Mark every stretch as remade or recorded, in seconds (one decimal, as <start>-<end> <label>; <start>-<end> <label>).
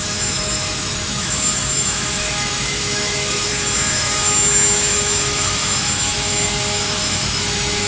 0.0-7.9 remade